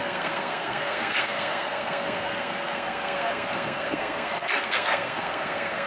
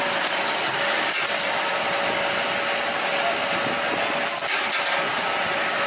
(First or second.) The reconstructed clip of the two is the first